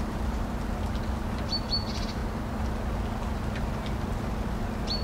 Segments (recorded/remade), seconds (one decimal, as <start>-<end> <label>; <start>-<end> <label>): 0.0-5.0 recorded